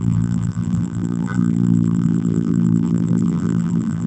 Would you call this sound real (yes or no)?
no